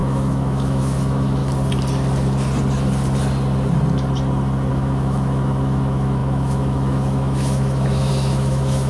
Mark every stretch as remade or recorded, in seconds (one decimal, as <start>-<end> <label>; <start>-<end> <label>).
0.0-1.4 remade; 1.4-4.7 recorded; 4.7-8.9 remade